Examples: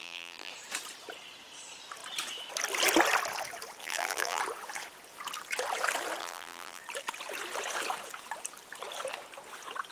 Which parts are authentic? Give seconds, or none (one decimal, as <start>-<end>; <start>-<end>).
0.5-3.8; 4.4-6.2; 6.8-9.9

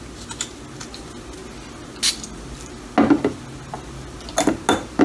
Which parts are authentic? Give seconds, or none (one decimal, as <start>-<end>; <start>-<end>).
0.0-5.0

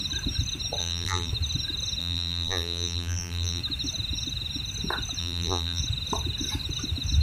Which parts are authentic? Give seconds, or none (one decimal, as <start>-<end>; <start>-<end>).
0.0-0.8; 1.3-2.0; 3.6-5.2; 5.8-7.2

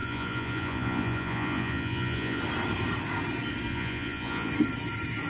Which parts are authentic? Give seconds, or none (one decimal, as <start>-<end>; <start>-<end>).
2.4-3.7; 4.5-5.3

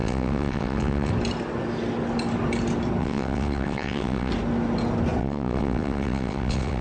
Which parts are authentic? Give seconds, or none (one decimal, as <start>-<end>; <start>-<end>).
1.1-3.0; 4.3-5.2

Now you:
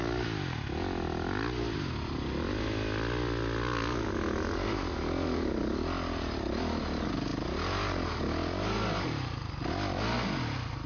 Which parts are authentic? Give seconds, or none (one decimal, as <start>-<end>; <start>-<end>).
0.0-10.9

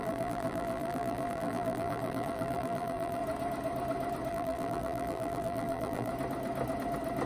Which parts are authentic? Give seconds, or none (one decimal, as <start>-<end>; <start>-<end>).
3.2-4.3; 6.1-7.3